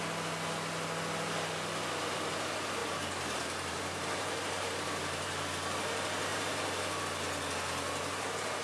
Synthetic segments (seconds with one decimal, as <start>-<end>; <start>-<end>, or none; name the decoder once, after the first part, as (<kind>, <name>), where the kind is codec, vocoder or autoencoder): 2.8-5.4 (vocoder, BigVGAN v2); 6.3-7.0